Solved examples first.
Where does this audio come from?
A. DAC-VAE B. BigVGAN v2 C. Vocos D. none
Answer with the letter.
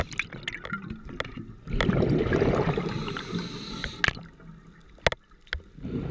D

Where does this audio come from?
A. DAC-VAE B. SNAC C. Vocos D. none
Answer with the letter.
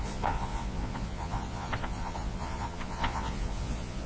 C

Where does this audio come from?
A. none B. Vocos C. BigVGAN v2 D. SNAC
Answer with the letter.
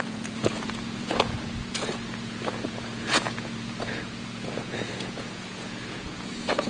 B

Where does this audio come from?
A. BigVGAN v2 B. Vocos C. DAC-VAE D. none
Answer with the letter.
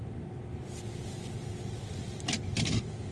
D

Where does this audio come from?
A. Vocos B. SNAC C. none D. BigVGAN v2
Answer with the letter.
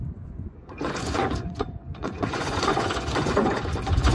A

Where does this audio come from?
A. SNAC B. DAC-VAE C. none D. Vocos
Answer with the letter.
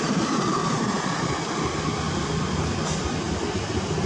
C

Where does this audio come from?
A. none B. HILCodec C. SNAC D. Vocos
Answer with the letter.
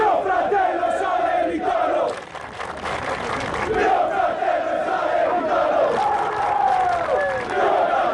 A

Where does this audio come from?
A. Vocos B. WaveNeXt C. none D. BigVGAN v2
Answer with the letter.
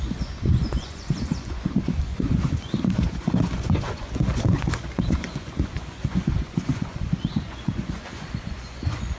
A